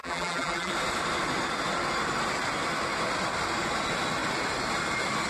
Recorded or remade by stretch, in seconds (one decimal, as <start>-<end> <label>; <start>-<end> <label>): 0.0-0.7 remade; 0.7-5.3 recorded